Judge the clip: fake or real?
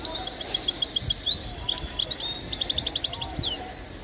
real